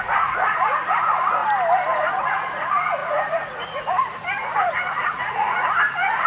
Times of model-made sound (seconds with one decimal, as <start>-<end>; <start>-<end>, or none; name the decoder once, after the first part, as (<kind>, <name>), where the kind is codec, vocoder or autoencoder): 0.0-1.4 (vocoder, Vocos); 2.2-6.3